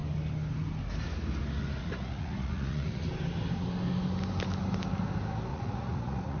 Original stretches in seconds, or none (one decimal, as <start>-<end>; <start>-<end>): 0.0-1.8; 3.0-5.5